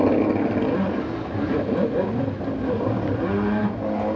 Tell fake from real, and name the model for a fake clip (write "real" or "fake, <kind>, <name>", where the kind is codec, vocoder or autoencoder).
real